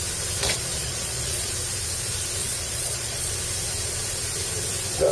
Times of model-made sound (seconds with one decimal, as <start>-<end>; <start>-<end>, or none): 0.4-1.5; 2.4-3.3